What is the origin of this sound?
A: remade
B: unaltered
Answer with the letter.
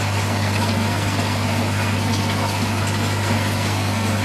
A